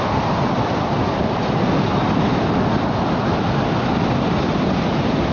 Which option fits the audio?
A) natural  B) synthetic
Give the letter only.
A